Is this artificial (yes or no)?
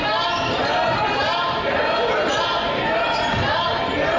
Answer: no